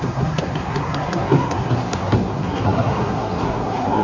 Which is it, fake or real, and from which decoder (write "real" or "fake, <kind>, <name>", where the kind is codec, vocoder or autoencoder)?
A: fake, codec, SNAC